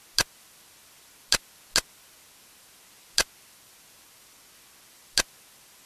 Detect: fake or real real